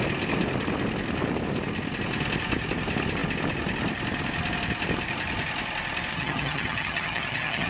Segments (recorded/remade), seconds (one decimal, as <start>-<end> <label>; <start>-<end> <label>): 0.0-6.1 recorded; 6.1-7.7 remade